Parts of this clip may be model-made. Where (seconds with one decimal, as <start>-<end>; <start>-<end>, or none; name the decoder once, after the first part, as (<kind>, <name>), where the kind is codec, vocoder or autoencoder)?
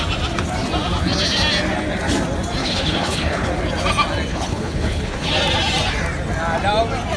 2.6-3.5 (codec, HILCodec); 4.3-5.3